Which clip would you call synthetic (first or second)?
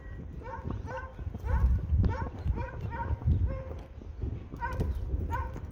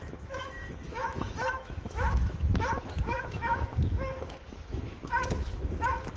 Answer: second